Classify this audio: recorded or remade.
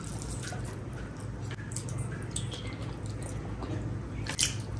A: recorded